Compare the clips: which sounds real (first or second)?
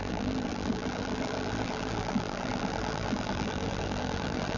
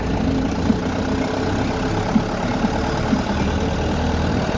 second